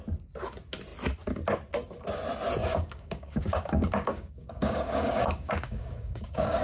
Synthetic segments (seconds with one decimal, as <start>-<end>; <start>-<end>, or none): 2.6-6.6